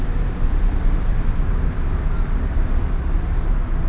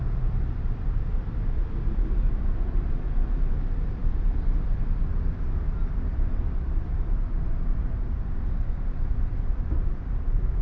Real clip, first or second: first